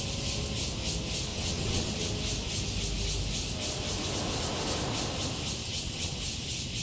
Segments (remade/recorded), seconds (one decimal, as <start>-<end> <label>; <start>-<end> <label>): 0.0-1.3 recorded; 1.3-2.1 remade; 2.1-5.6 recorded; 5.6-6.2 remade; 6.2-6.8 recorded